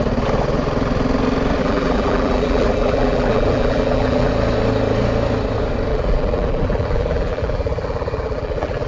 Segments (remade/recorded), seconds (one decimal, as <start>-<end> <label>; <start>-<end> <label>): 0.0-1.6 recorded; 1.6-4.3 remade; 4.3-5.9 recorded; 5.9-8.9 remade